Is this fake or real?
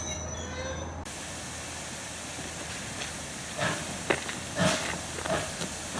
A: real